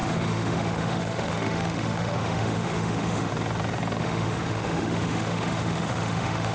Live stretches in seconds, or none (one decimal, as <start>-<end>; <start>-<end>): 3.3-4.0